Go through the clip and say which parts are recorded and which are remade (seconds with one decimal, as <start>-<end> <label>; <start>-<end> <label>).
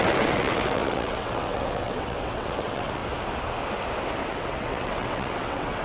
0.0-3.0 remade; 3.0-4.3 recorded; 4.3-5.8 remade